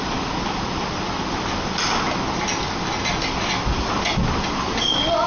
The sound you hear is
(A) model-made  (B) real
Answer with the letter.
B